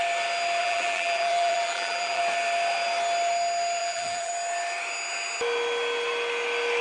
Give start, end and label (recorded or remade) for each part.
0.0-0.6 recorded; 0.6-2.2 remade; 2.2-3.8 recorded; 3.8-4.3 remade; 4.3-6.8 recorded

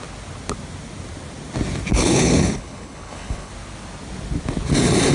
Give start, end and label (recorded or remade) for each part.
0.0-1.9 recorded; 1.9-3.5 remade; 3.5-5.1 recorded

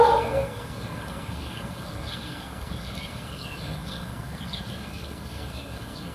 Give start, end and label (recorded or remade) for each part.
0.0-6.1 remade